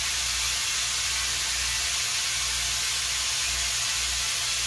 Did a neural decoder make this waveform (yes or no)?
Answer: no